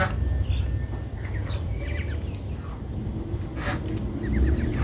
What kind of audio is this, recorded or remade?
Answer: recorded